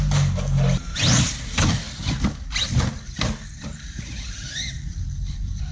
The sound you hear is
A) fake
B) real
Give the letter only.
B